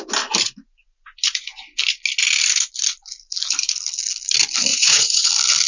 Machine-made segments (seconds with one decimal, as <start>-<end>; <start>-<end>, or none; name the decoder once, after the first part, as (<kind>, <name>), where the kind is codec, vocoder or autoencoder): 4.7-5.3 (vocoder, Vocos)